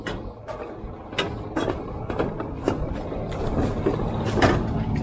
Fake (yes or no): no